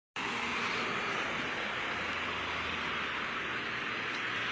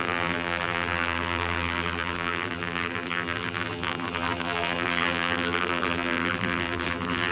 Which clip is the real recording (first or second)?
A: first